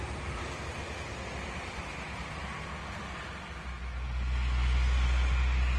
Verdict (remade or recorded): recorded